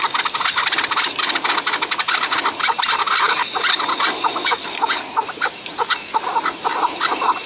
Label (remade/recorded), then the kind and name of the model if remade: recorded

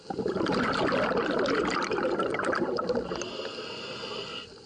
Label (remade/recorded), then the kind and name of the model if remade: recorded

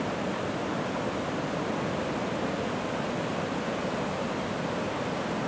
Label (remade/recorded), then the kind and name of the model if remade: recorded